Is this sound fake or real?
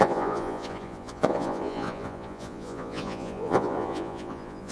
fake